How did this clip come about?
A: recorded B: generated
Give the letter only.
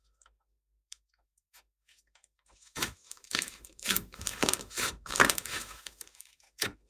B